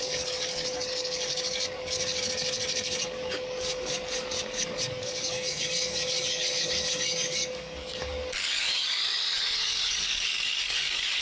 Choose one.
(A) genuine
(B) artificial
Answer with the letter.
B